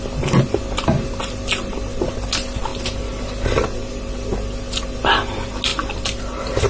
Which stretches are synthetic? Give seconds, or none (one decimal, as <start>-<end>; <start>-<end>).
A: none